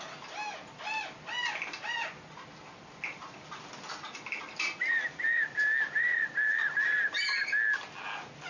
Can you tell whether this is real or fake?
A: real